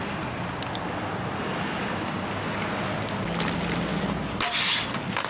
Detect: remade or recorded recorded